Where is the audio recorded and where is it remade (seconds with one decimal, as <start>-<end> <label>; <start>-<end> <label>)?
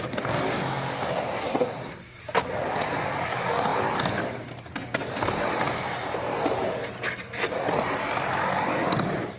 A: 0.0-1.4 recorded; 1.4-2.2 remade; 2.2-9.4 recorded